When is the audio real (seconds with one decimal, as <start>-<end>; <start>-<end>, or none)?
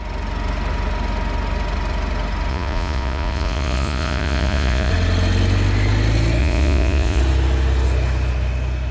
0.0-2.5; 4.9-6.4; 7.2-8.9